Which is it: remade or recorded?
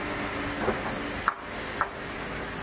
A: recorded